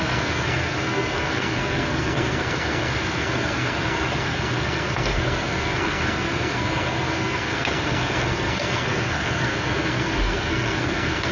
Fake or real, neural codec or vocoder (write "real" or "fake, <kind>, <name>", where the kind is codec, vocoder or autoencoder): fake, codec, SNAC